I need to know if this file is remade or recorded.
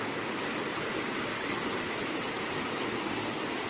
recorded